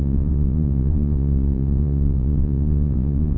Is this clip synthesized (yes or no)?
yes